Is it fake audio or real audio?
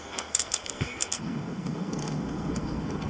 fake